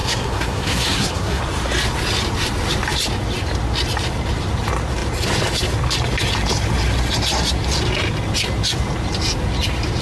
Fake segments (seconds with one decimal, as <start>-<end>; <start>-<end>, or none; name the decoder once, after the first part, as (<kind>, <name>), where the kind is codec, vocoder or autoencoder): 0.0-1.4 (codec, SNAC)